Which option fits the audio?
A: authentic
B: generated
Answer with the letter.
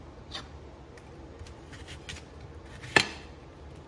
A